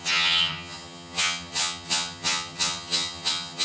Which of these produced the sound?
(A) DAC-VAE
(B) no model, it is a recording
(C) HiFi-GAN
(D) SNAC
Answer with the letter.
C